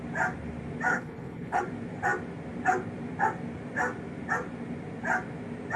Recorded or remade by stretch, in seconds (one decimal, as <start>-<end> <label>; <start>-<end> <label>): 0.0-0.9 recorded; 0.9-1.6 remade; 1.6-5.8 recorded